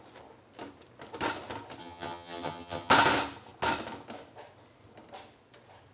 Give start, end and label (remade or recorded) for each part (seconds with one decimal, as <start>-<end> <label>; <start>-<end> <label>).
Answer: 0.0-1.8 recorded; 1.8-2.9 remade; 2.9-5.9 recorded